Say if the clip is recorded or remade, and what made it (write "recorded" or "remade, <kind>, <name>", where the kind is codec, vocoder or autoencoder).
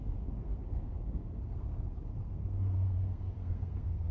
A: remade, codec, SNAC